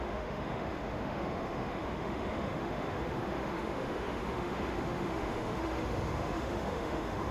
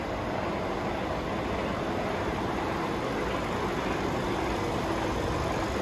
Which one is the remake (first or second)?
first